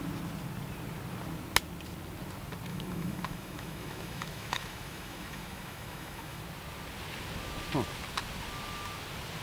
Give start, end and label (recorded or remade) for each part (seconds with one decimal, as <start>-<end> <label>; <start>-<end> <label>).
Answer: 0.0-2.7 recorded; 2.7-6.4 remade; 6.4-9.4 recorded